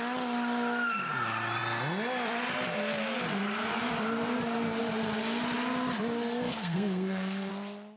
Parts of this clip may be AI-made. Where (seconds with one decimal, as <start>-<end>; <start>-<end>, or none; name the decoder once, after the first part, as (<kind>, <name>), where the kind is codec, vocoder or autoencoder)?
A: 6.5-7.5 (codec, SNAC)

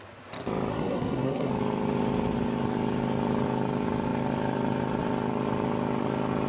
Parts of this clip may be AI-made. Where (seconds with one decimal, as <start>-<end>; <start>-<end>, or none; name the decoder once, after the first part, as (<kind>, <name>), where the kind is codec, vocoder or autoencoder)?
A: 0.7-1.5 (codec, SNAC)

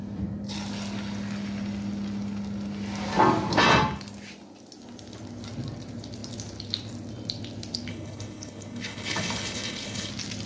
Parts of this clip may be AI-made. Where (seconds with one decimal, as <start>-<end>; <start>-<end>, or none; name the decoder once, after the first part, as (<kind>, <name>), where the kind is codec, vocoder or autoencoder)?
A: 7.9-10.1 (codec, HILCodec)